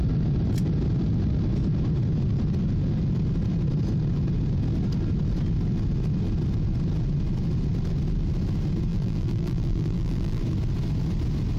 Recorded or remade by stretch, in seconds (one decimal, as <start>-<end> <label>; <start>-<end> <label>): 0.0-8.9 recorded; 8.9-10.4 remade; 10.4-11.6 recorded